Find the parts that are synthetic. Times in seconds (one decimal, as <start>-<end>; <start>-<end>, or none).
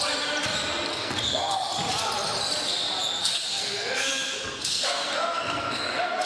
0.9-1.7; 3.2-6.3